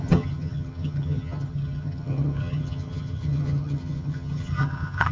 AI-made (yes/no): yes